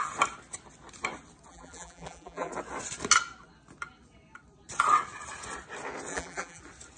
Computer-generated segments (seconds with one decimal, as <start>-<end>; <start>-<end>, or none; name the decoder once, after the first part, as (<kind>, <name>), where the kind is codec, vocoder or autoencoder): 1.5-2.5 (vocoder, BigVGAN v2); 6.1-6.6